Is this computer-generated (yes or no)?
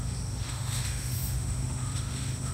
yes